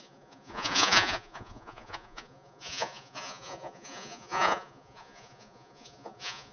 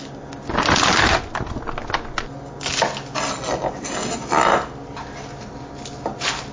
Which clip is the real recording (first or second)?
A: second